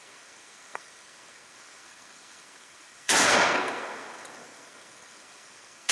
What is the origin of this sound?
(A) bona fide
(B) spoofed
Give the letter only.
B